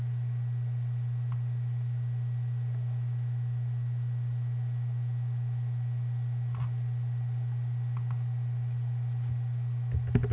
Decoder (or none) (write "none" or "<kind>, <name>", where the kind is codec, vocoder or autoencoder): none